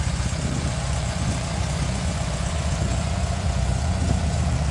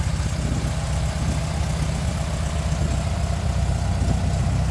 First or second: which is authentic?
second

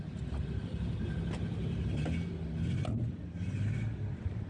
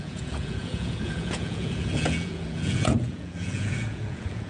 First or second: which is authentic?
first